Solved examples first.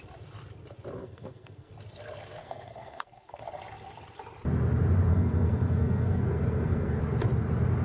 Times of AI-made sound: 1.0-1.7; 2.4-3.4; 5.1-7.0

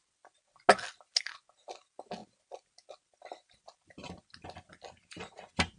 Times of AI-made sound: none

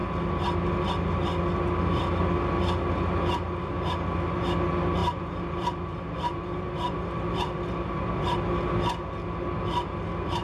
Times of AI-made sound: 5.0-8.2

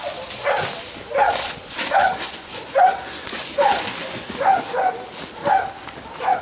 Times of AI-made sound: 1.4-4.9

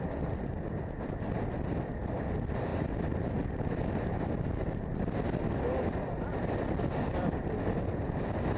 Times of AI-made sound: none

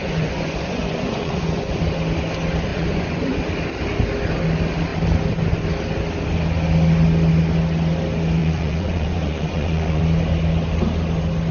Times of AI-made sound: 0.0-1.8; 2.7-3.4; 8.4-10.0

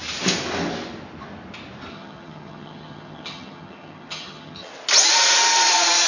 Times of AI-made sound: 1.9-4.7